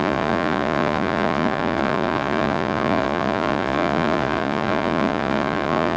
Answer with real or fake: fake